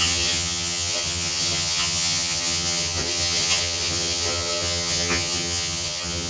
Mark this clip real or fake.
fake